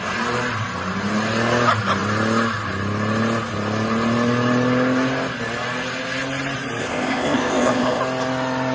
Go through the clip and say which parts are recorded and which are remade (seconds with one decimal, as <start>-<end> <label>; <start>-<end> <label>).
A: 0.0-6.8 recorded; 6.8-8.0 remade; 8.0-8.7 recorded